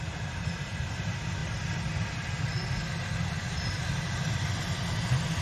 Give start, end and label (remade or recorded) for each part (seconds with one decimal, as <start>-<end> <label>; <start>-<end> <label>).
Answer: 0.0-5.4 recorded